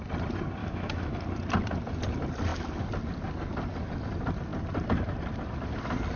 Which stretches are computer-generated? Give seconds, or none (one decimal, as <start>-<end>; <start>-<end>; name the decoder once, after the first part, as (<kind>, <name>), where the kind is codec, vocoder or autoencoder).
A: 0.6-1.2 (autoencoder, DAC-VAE)